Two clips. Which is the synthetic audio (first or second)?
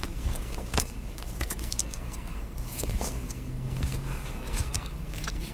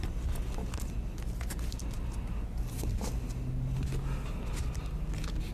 first